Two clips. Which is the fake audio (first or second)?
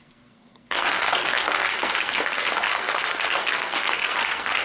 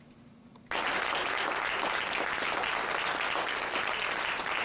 first